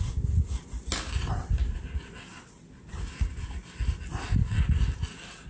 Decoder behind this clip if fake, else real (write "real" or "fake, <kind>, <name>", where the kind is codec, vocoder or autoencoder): real